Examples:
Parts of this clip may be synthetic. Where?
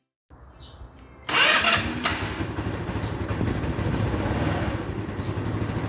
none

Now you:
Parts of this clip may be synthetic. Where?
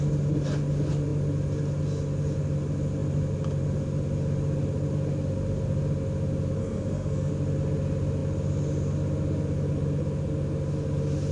6.6-7.3 (codec, SNAC)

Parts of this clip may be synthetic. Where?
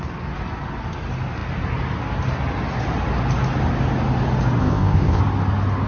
4.6-5.2 (codec, ZipCodec)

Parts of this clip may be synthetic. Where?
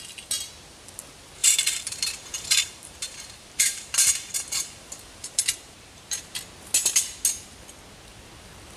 1.4-6.4 (vocoder, BigVGAN v2)